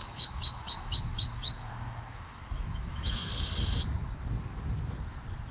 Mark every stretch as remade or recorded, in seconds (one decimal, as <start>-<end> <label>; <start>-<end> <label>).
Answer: 0.0-3.3 remade; 3.3-5.5 recorded